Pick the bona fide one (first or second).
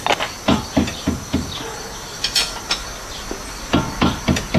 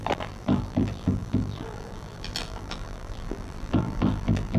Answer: first